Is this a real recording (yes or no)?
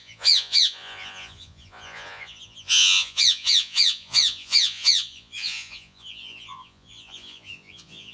no